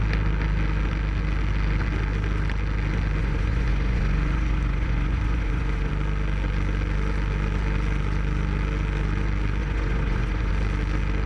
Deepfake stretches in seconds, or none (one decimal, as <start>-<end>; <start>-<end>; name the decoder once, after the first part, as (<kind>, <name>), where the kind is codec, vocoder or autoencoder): 3.2-5.9 (vocoder, Vocos); 9.6-10.5